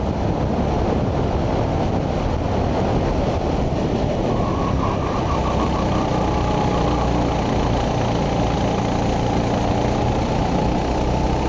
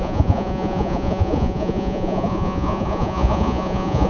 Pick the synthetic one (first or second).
second